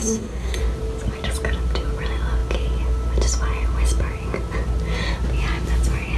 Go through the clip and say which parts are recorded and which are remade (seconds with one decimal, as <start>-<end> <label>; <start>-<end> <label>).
0.0-0.6 remade; 0.6-6.2 recorded